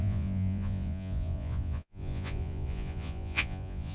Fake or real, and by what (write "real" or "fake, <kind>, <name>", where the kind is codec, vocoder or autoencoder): fake, vocoder, Vocos